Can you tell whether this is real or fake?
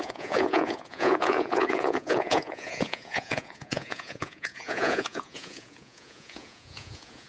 fake